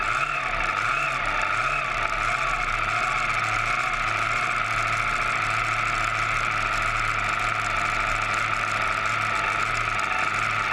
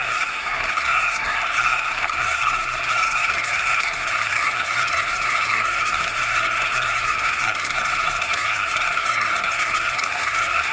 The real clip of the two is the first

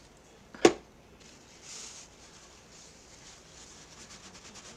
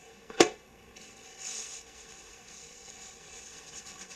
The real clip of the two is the first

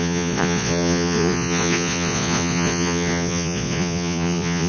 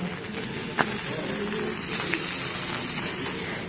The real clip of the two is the second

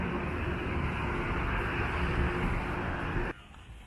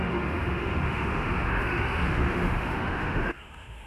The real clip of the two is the first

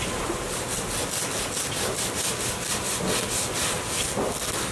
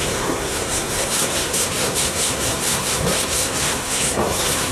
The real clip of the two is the first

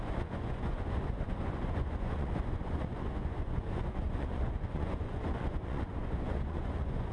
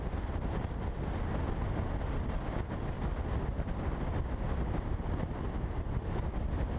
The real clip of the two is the second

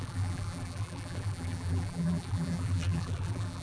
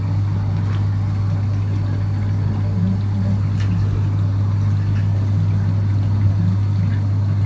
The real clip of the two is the second